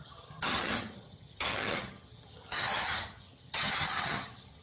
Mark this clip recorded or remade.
remade